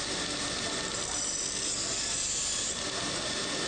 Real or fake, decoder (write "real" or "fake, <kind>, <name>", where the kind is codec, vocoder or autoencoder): real